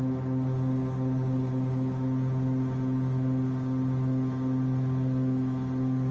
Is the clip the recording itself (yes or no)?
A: yes